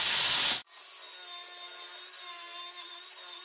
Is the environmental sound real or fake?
real